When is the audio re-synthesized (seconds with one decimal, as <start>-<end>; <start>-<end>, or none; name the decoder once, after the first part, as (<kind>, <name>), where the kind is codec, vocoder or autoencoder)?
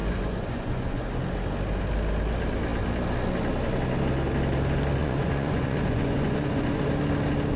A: 0.0-1.2 (vocoder, Vocos); 5.0-6.8